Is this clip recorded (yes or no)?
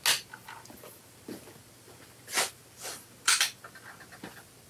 yes